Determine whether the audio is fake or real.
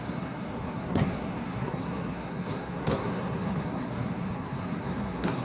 fake